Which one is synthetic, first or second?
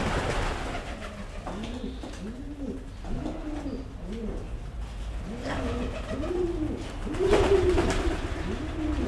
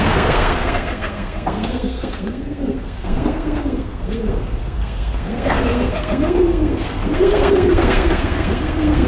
second